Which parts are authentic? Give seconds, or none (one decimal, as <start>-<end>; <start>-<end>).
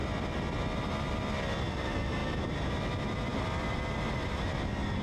0.0-5.0